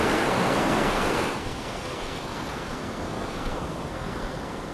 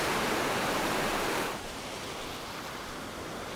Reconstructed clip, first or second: first